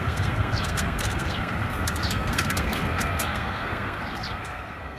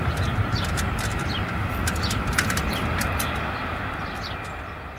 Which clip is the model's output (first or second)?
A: first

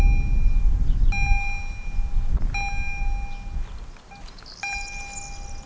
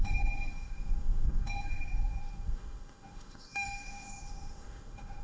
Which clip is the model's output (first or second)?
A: second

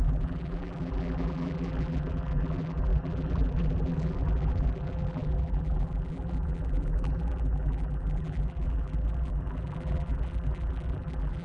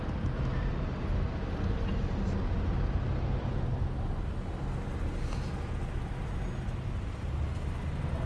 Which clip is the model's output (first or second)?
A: first